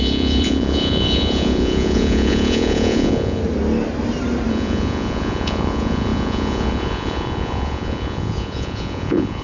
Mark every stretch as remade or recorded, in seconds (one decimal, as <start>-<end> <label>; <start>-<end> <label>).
0.0-3.4 remade; 3.4-4.5 recorded; 4.5-9.4 remade